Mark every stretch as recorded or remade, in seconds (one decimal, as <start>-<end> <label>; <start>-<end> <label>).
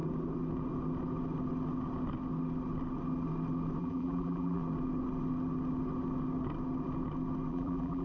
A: 0.0-3.8 recorded; 3.8-4.6 remade; 4.6-7.5 recorded; 7.5-8.0 remade